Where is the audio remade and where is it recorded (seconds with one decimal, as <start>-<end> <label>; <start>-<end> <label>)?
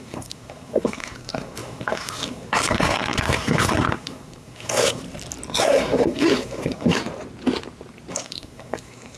0.0-5.0 remade; 5.0-5.6 recorded; 5.6-7.0 remade; 7.0-8.1 recorded; 8.1-9.2 remade